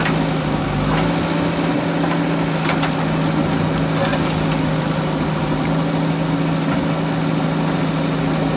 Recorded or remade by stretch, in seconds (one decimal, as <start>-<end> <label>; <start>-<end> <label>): 0.0-8.6 recorded